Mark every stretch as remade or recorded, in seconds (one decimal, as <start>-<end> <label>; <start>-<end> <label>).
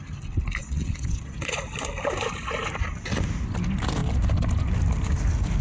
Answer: 0.0-0.6 recorded; 0.6-1.6 remade; 1.6-5.6 recorded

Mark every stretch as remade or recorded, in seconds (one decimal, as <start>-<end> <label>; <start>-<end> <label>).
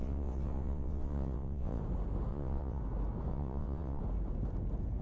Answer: 0.0-1.8 remade; 1.8-2.3 recorded; 2.3-2.8 remade; 2.8-3.3 recorded; 3.3-4.0 remade; 4.0-5.0 recorded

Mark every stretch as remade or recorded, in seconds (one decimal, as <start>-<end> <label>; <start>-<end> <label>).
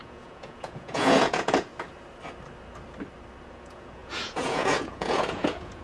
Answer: 0.0-1.7 remade; 1.7-3.5 recorded; 3.5-5.8 remade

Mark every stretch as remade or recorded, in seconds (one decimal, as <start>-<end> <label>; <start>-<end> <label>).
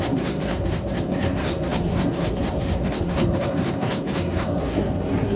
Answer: 0.0-5.4 remade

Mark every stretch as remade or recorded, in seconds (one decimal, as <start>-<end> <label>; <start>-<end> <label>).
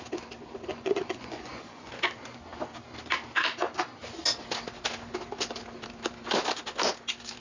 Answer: 0.0-0.7 recorded; 0.7-1.9 remade; 1.9-7.4 recorded